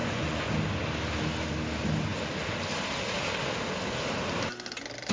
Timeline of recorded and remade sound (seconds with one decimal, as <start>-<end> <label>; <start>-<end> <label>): 0.0-0.5 remade; 0.5-5.1 recorded